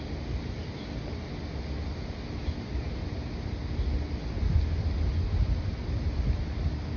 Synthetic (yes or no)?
no